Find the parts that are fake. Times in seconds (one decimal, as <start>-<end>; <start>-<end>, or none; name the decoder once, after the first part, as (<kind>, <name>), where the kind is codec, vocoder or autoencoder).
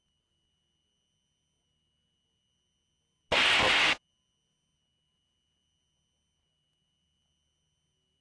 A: none